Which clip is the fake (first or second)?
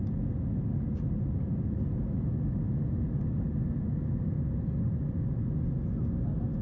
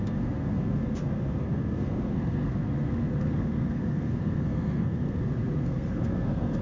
second